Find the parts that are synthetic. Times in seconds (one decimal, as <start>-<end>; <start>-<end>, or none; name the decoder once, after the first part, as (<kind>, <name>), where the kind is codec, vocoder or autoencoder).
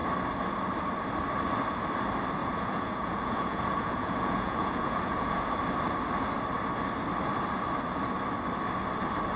2.4-5.5 (vocoder, Vocos)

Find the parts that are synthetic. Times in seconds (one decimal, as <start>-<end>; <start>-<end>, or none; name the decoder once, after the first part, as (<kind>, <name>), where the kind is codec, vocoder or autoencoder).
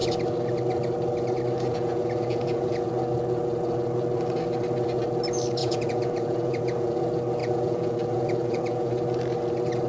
1.7-2.9 (vocoder, Vocos); 5.6-7.0; 7.4-8.9